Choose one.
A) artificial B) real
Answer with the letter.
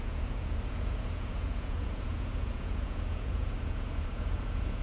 A